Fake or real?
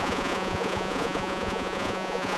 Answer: fake